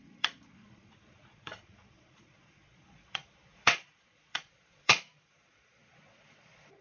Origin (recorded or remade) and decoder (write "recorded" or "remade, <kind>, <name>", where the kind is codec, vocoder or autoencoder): remade, vocoder, Vocos